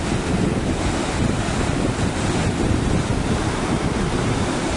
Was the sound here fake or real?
real